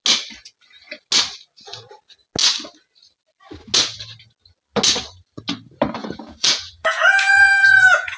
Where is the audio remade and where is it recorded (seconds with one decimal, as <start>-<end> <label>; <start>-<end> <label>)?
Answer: 0.0-6.0 recorded; 6.0-8.2 remade